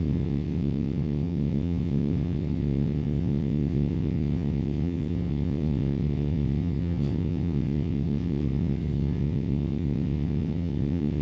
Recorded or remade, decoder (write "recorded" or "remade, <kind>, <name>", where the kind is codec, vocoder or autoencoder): remade, vocoder, WaveNeXt